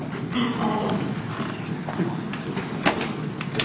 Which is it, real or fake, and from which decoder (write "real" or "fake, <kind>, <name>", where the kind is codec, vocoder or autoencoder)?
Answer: real